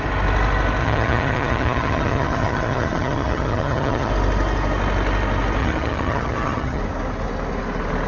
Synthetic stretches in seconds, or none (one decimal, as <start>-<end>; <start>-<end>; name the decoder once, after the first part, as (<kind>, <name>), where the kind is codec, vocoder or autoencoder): 0.8-4.1 (vocoder, HiFi-GAN); 5.6-6.8